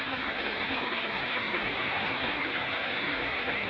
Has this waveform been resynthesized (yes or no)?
yes